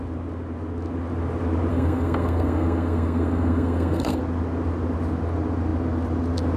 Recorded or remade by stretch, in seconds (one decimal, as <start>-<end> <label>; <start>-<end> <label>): 0.0-1.7 recorded; 1.7-4.2 remade; 4.2-6.6 recorded